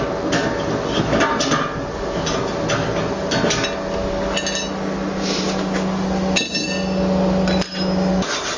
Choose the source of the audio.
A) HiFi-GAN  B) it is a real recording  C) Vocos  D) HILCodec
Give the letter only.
B